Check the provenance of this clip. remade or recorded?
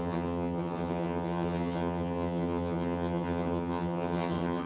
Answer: remade